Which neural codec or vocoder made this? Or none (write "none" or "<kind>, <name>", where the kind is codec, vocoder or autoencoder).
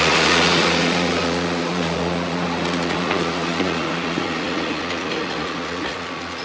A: vocoder, Vocos